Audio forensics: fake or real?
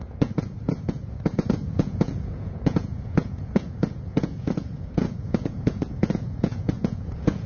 fake